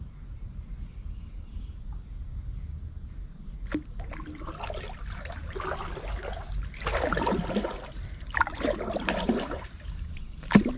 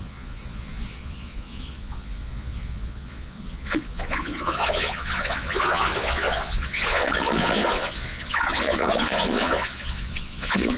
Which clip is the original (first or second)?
first